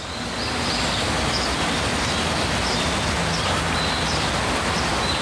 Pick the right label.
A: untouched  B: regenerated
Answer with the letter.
A